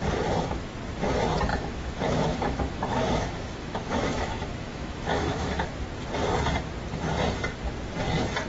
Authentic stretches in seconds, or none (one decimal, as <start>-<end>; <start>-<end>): 0.0-1.5; 5.6-8.5